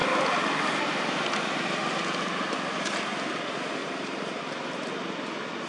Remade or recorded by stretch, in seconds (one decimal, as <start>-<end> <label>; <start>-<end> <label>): 0.0-3.8 recorded; 3.8-4.4 remade; 4.4-5.7 recorded